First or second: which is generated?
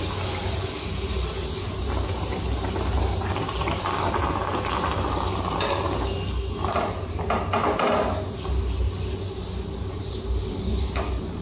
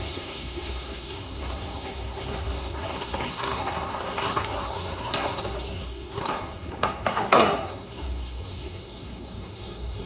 second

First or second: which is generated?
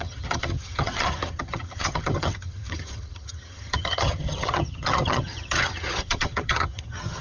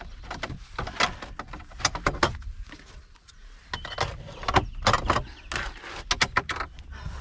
first